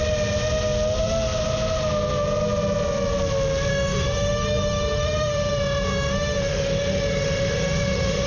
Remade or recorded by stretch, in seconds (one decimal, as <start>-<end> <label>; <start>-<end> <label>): 0.0-3.7 recorded; 3.7-8.3 remade